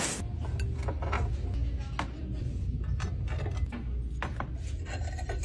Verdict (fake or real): real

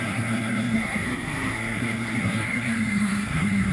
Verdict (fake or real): fake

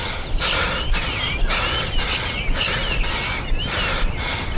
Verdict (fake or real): real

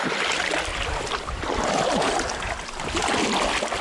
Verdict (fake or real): real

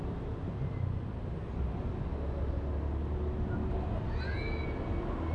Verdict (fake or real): real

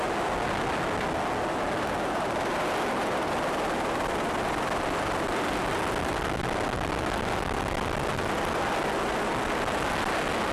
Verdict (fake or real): real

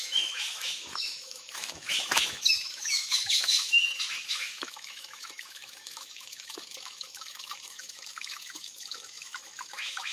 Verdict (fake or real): fake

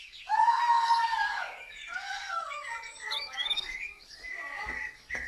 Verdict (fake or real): fake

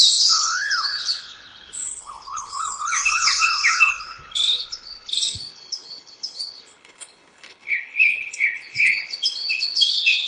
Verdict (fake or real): fake